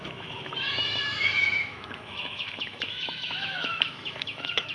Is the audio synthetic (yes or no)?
yes